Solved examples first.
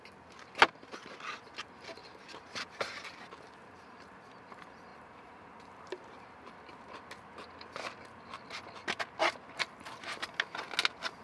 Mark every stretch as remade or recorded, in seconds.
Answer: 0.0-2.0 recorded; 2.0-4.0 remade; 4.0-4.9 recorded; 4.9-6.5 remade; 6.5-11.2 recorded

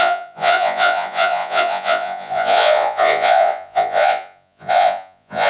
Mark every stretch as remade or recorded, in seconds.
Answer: 0.0-5.5 remade

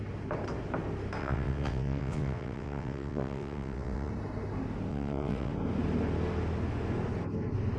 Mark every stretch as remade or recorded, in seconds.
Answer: 0.0-1.2 recorded; 1.2-4.1 remade; 4.1-4.9 recorded; 4.9-5.5 remade; 5.5-7.8 recorded

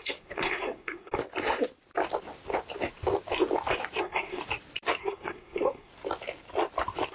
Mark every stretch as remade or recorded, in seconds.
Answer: 0.0-1.2 remade; 1.2-4.0 recorded; 4.0-4.4 remade; 4.4-5.0 recorded; 5.0-5.9 remade; 5.9-7.1 recorded

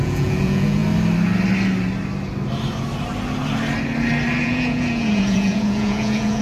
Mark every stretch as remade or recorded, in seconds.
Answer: 0.0-0.8 remade; 0.8-4.4 recorded; 4.4-6.4 remade